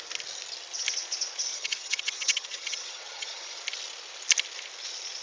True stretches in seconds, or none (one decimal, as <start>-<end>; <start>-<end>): 0.0-1.5; 3.6-5.2